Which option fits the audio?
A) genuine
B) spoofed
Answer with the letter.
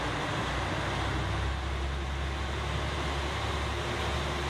A